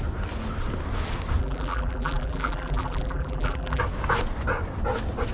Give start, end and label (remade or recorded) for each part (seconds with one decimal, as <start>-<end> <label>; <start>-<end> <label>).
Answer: 0.0-1.4 recorded; 1.4-3.8 remade; 3.8-5.3 recorded